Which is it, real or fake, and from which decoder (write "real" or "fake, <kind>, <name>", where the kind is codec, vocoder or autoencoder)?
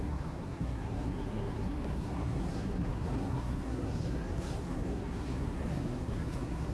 fake, codec, SNAC